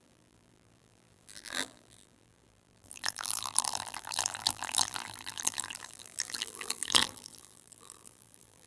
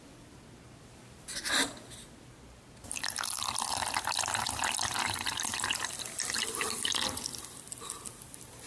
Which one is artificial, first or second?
first